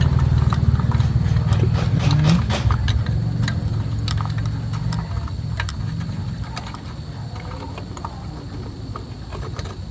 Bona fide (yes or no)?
yes